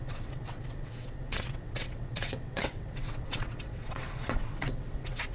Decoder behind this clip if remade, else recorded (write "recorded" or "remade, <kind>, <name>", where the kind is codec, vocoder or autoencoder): remade, vocoder, WaveNeXt